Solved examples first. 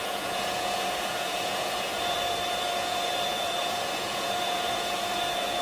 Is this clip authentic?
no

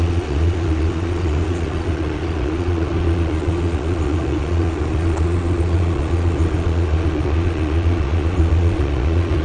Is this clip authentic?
no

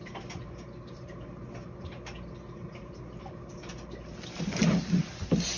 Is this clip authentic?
yes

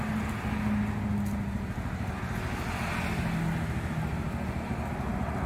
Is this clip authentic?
yes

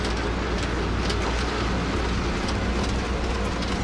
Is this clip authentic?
yes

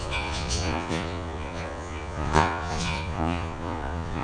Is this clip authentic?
no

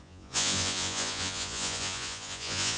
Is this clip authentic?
no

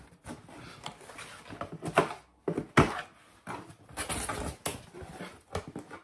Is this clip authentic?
yes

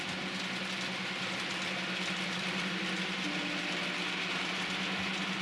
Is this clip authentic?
yes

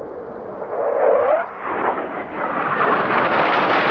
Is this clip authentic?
yes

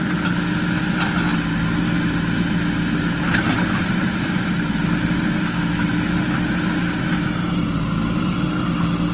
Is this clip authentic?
yes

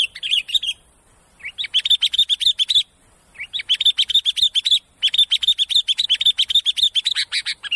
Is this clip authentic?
yes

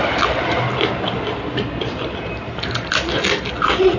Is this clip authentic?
yes